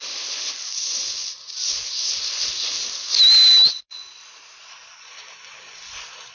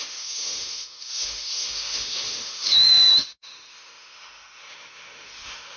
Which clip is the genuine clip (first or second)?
first